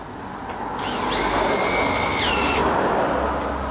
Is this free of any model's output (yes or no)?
yes